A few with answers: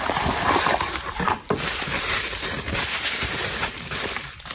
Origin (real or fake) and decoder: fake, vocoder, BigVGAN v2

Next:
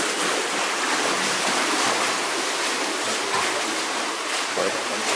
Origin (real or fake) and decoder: real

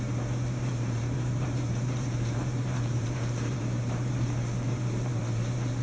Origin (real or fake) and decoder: fake, vocoder, BigVGAN v2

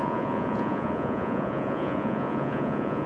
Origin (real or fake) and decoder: fake, vocoder, Vocos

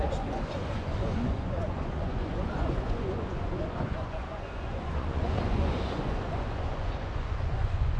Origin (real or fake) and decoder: fake, vocoder, Vocos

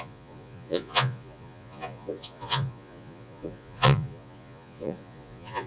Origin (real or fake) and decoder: fake, vocoder, Vocos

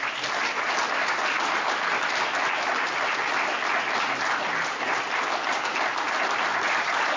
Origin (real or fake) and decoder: real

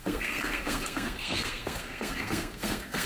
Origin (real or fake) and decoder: fake, codec, SNAC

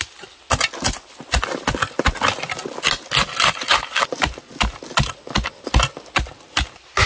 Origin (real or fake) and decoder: real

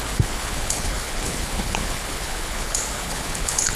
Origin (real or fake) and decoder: fake, codec, HILCodec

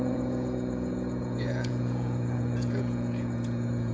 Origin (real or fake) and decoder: fake, vocoder, Vocos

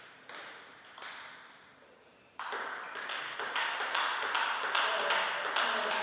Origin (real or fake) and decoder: real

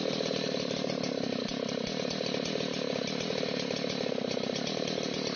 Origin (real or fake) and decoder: real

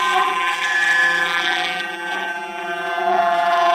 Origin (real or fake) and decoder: fake, vocoder, BigVGAN v2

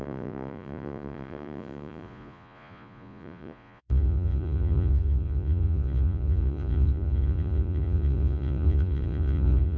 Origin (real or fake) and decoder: fake, vocoder, Vocos